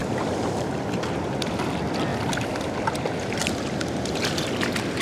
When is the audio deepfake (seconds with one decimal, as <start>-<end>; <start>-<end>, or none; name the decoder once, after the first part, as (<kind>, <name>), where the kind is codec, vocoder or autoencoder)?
0.0-1.0 (vocoder, BigVGAN v2); 3.4-4.5